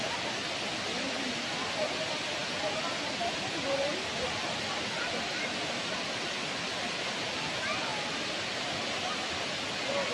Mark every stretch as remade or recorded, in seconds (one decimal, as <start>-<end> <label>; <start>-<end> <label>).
0.0-10.1 recorded